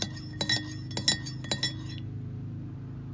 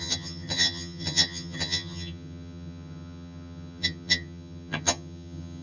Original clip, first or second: first